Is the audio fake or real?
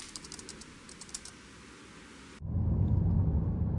real